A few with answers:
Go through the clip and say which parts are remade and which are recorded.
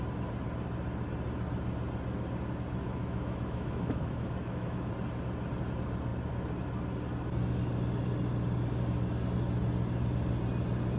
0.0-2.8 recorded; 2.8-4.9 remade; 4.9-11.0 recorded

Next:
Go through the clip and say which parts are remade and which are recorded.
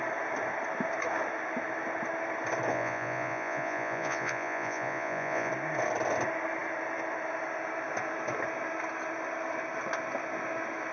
0.0-2.7 recorded; 2.7-5.5 remade; 5.5-10.9 recorded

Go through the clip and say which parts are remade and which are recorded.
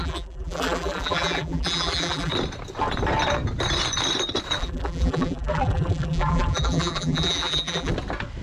0.0-2.3 remade; 2.3-4.6 recorded; 4.6-7.9 remade; 7.9-8.4 recorded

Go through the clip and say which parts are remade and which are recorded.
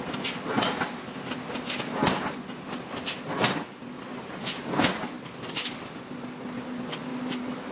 0.0-7.7 recorded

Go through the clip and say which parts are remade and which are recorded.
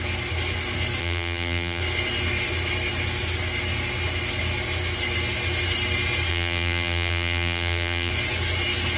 0.0-1.0 recorded; 1.0-1.8 remade; 1.8-6.3 recorded; 6.3-8.1 remade; 8.1-9.0 recorded